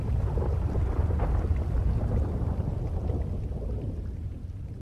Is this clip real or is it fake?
real